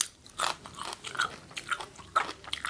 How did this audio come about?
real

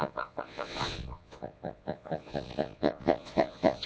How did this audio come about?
fake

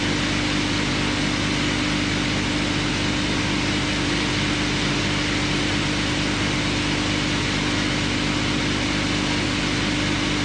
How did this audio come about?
real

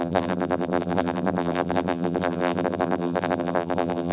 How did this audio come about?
fake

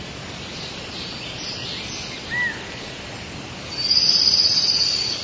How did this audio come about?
real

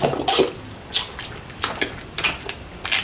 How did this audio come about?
real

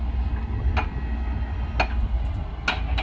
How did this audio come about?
real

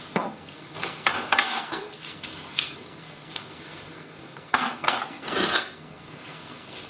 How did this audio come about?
fake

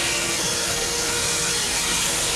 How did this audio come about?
fake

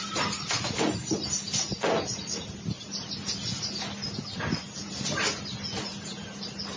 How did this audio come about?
real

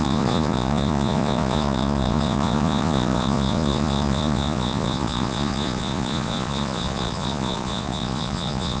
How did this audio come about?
fake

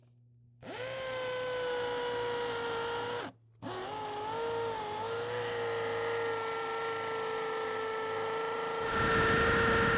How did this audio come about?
real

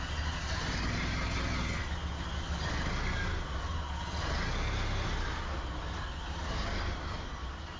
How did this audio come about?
real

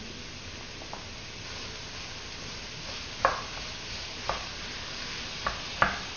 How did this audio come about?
real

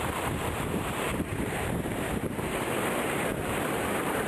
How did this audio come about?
fake